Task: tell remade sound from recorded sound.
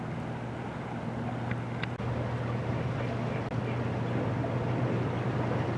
recorded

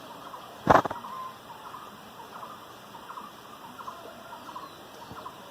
remade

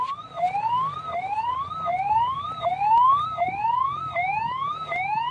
recorded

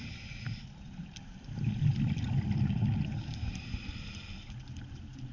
recorded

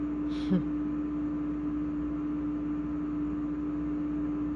recorded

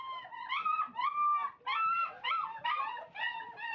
recorded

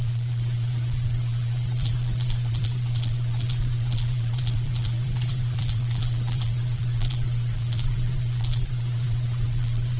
remade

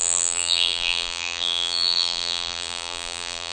remade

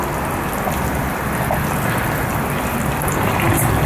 recorded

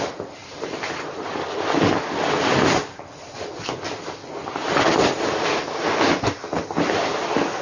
remade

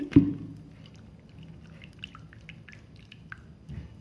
recorded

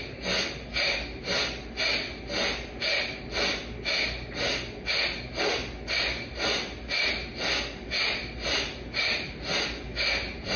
recorded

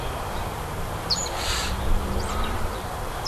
remade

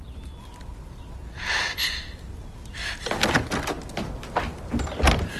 recorded